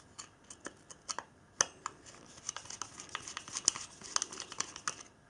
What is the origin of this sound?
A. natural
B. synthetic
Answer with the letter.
A